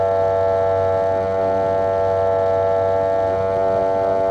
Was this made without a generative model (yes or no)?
yes